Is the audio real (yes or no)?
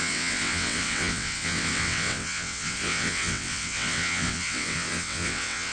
no